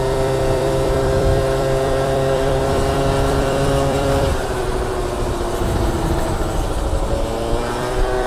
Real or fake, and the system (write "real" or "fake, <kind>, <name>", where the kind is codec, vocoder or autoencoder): fake, vocoder, BigVGAN v2